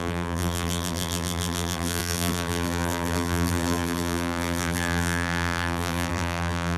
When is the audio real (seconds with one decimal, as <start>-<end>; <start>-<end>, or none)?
none